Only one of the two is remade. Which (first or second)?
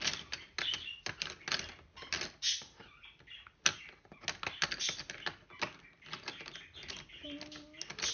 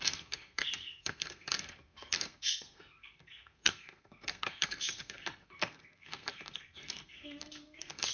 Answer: second